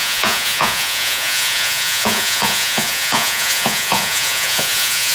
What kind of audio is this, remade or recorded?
remade